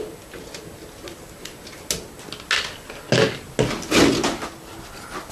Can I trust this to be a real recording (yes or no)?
yes